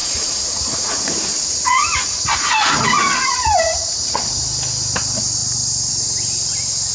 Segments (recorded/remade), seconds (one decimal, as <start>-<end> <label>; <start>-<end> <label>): 0.0-4.1 remade; 4.1-6.9 recorded